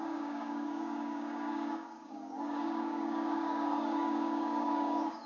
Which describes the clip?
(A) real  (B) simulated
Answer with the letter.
B